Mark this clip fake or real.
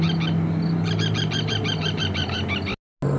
real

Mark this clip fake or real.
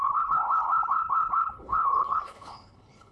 fake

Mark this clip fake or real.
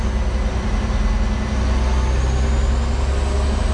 real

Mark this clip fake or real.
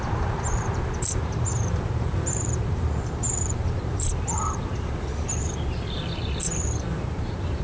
fake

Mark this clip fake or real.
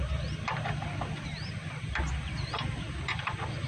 fake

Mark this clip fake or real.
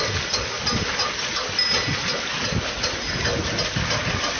real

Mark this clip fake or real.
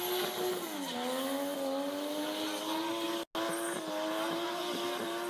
real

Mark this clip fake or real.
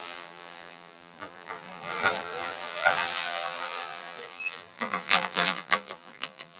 fake